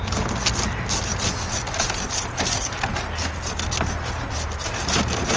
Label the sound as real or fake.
real